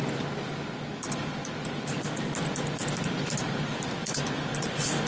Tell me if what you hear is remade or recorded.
recorded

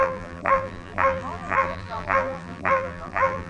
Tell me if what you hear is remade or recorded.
remade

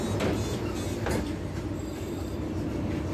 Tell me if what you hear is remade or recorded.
recorded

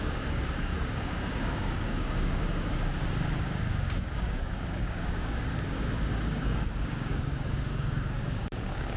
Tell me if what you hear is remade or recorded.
remade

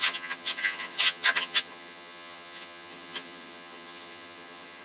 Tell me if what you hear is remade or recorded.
remade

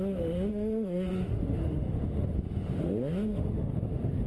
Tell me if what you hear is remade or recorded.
remade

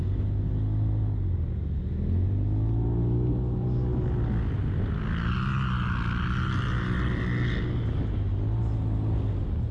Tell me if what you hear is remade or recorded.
recorded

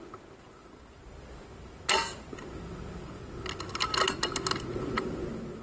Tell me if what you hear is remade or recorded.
recorded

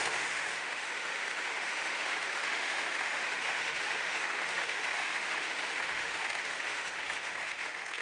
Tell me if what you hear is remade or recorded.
remade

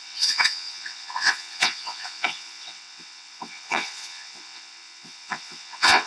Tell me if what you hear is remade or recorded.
remade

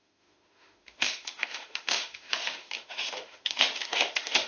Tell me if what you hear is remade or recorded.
remade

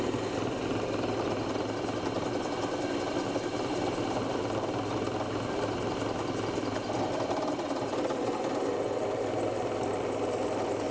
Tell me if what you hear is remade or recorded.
recorded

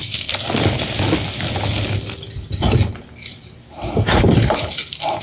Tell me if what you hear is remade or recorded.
recorded